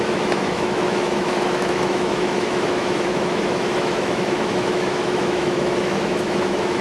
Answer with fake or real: fake